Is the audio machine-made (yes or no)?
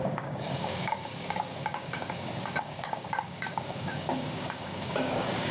yes